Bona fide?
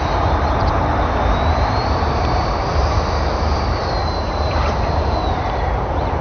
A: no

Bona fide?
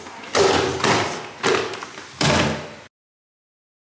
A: yes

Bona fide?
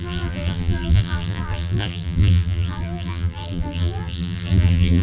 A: no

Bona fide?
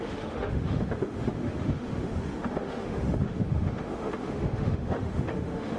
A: no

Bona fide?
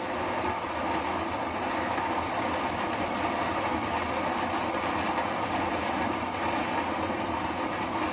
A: yes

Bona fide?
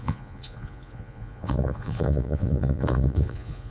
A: no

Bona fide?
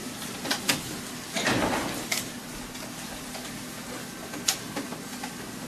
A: yes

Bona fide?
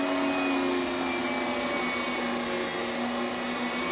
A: yes